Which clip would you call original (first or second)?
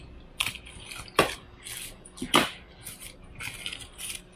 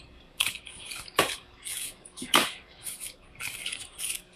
first